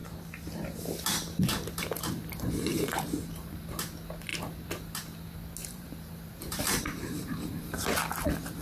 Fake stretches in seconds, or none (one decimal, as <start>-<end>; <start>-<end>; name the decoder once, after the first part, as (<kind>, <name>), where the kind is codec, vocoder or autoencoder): 2.7-3.6 (vocoder, BigVGAN v2); 5.6-7.8